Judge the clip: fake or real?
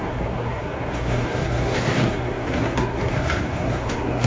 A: fake